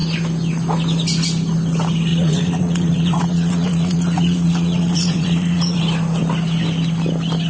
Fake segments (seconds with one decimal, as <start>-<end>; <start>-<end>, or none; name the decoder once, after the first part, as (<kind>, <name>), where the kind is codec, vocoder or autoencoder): 2.1-5.8 (vocoder, Vocos)